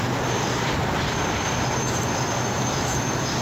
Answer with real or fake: real